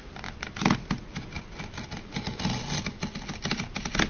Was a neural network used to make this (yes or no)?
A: no